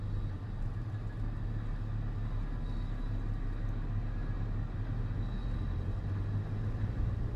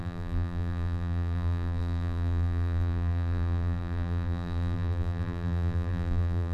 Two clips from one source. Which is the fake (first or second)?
second